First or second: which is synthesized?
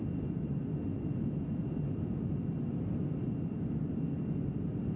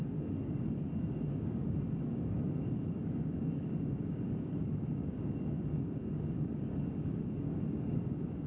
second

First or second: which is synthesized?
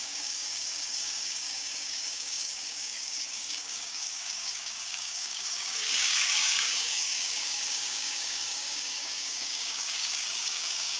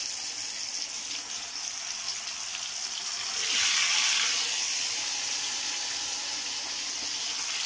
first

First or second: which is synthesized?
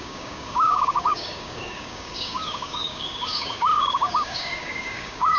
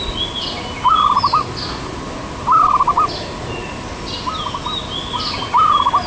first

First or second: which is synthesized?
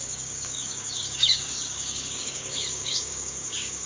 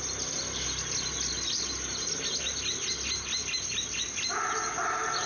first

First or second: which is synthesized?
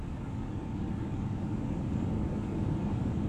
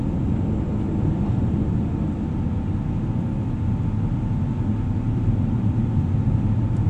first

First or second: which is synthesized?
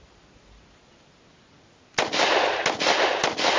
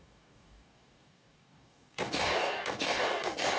second